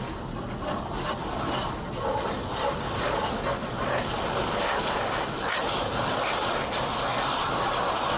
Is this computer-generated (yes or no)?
no